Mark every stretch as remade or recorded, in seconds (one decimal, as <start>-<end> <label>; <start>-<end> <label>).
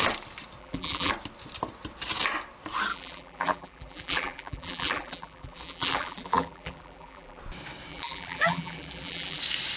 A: 0.0-0.6 recorded; 0.6-1.1 remade; 1.1-2.9 recorded; 2.9-7.4 remade; 7.4-7.9 recorded; 7.9-9.4 remade; 9.4-9.8 recorded